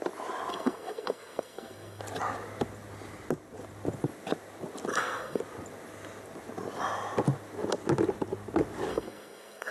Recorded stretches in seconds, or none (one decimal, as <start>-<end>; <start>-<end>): 0.0-0.5; 2.0-4.9; 5.4-8.9